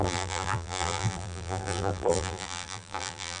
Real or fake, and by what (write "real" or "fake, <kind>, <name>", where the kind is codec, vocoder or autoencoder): fake, vocoder, BigVGAN v2